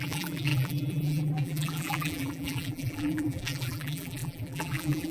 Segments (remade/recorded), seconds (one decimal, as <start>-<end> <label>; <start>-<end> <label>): 0.0-5.1 remade